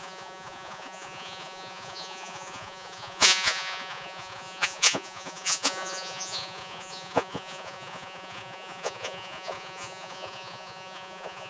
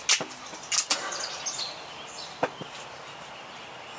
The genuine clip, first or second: second